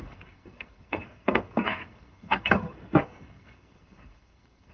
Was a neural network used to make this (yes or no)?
yes